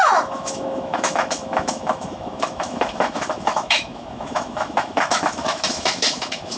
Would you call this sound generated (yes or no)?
yes